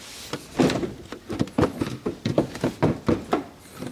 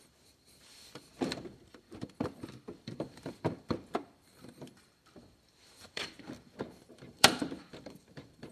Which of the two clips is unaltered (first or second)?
first